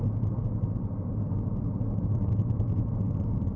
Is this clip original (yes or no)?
yes